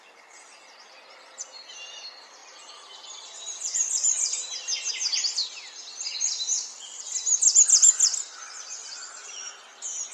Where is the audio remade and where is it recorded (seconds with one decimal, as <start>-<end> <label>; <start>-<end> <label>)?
0.0-10.1 recorded